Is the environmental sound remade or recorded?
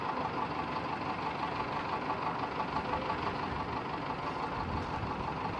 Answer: recorded